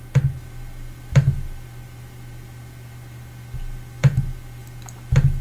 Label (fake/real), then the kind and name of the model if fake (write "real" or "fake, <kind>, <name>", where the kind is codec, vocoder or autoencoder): real